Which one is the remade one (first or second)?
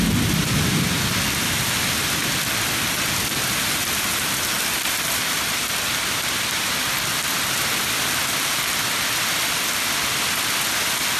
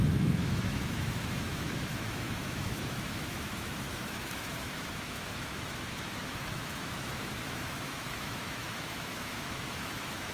second